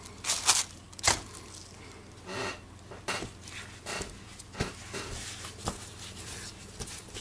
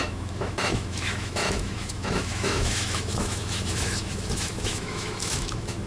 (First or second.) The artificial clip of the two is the second